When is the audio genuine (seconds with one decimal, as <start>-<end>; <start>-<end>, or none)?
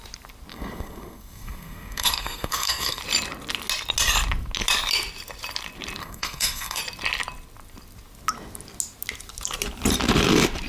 0.0-0.5; 3.0-6.0; 6.8-10.7